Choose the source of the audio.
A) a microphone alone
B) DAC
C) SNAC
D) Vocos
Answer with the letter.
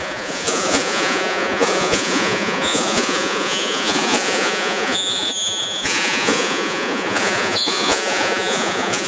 D